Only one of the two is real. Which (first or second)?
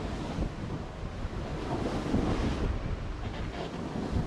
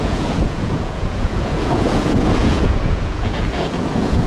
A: first